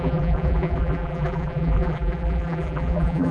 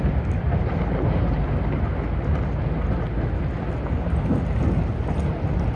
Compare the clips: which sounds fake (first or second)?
first